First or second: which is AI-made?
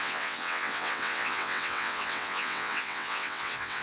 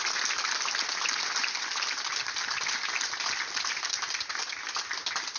first